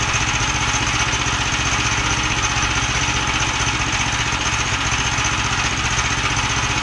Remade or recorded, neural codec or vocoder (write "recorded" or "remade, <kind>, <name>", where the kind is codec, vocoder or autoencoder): recorded